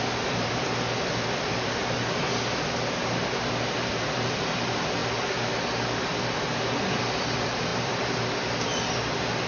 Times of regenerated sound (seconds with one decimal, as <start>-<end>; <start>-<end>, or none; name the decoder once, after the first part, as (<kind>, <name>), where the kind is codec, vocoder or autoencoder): 0.0-1.8 (vocoder, BigVGAN v2); 3.9-5.0; 7.0-9.5